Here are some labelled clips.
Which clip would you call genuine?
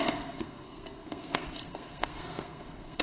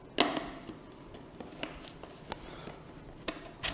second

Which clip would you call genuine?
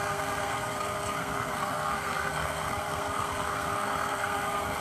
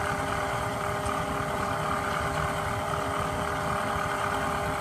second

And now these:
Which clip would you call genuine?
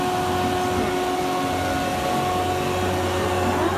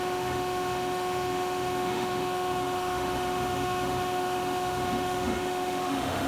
first